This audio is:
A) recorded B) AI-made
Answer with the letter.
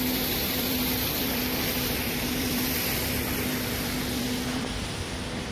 B